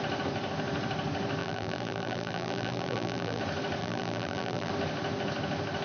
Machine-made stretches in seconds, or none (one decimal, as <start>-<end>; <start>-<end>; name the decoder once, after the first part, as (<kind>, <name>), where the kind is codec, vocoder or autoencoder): 1.4-3.4 (vocoder, BigVGAN v2); 3.8-4.7